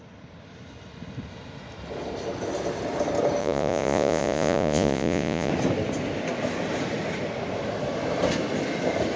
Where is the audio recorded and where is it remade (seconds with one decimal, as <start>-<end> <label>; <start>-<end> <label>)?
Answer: 0.0-3.4 recorded; 3.4-5.5 remade; 5.5-9.2 recorded